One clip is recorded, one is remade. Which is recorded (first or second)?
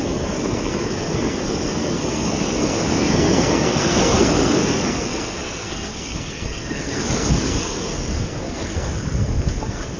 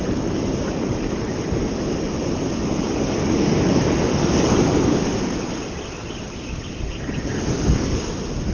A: second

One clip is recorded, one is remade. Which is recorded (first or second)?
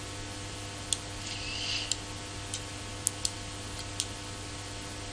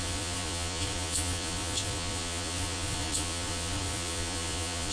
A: first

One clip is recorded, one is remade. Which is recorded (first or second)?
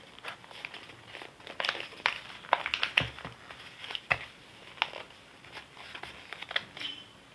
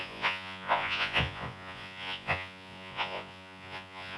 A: first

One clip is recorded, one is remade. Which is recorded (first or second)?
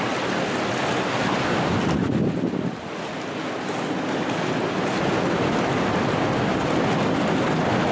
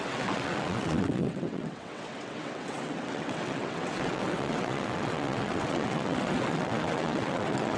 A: first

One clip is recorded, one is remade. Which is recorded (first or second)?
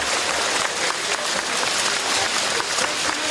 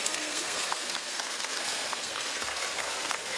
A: first